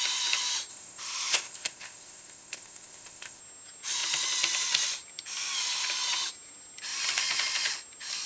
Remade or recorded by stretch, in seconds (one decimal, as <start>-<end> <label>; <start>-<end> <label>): 0.0-0.7 recorded; 0.7-3.4 remade; 3.4-8.3 recorded